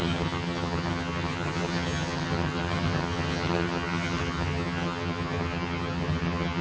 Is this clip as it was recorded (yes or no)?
no